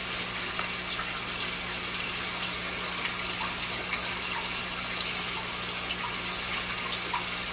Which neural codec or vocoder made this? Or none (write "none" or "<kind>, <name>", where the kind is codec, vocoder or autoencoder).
none